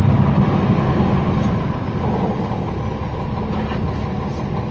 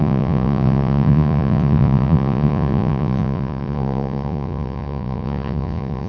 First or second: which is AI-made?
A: second